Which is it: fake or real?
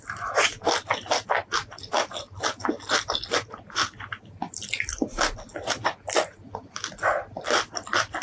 real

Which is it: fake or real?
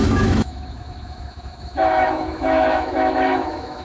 fake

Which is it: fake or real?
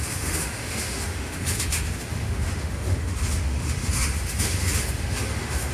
fake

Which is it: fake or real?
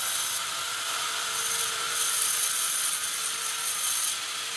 real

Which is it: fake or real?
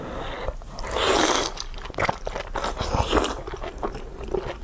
real